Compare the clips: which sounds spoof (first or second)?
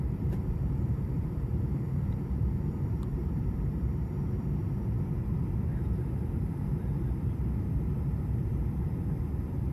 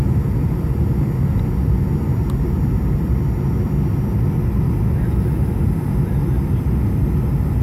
first